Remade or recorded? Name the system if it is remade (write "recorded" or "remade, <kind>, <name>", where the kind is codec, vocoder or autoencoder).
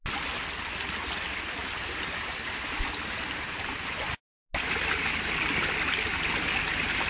recorded